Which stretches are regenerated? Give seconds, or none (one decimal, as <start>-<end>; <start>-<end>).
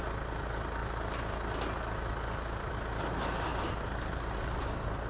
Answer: none